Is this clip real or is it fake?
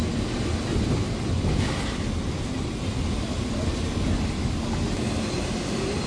real